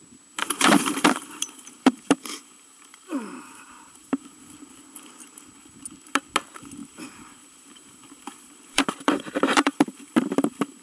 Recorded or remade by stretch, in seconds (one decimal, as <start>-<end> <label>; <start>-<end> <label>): 0.0-0.4 recorded; 0.4-4.4 remade; 4.4-6.8 recorded; 6.8-10.1 remade; 10.1-10.8 recorded